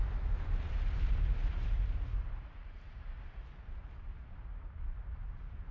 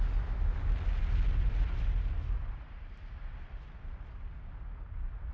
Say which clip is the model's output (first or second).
first